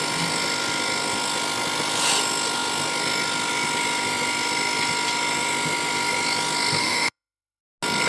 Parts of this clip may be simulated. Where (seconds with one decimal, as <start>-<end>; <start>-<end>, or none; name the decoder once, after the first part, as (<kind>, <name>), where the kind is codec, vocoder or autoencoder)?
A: 6.8-7.6 (autoencoder, DAC-VAE)